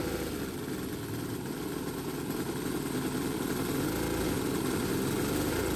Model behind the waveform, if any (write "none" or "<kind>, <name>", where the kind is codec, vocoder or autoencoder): none